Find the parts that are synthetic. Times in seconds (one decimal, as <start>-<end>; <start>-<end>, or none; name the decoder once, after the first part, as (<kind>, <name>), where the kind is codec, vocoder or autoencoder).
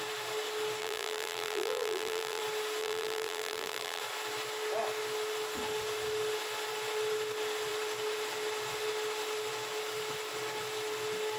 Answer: 0.8-2.4 (vocoder, BigVGAN v2); 2.8-4.0